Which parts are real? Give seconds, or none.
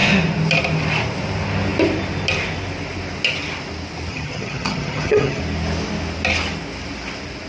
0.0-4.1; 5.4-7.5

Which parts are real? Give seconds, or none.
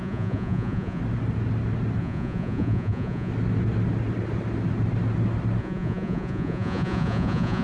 1.0-2.0; 3.3-5.6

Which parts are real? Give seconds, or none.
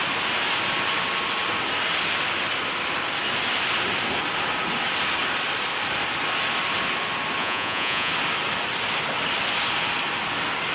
0.0-7.4; 8.1-10.7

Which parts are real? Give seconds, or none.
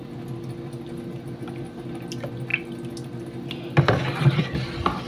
0.0-5.1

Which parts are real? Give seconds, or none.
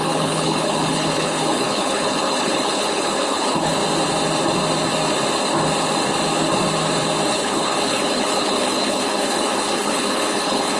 3.8-7.3